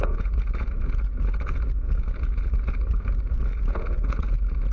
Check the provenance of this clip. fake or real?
fake